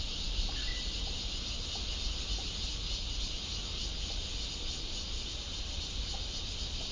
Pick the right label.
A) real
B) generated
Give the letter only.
A